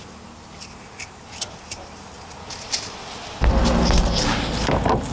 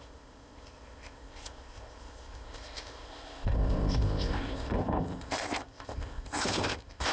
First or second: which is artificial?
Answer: second